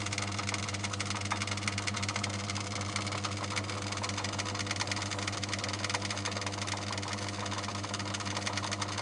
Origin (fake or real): real